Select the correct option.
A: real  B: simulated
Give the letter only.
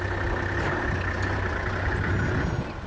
A